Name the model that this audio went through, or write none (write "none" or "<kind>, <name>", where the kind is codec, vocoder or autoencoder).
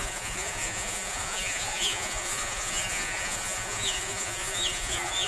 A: vocoder, Vocos